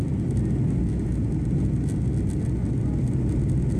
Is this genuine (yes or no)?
yes